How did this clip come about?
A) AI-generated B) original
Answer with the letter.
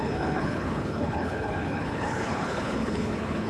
A